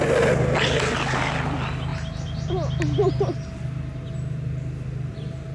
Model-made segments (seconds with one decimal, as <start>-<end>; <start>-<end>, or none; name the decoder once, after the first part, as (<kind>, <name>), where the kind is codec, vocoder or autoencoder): none